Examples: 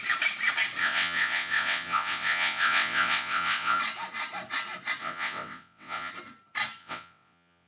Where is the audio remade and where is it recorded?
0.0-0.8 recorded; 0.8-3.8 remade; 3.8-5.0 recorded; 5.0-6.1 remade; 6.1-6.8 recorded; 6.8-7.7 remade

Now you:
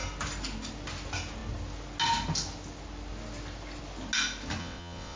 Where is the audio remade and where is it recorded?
0.0-4.6 recorded; 4.6-5.2 remade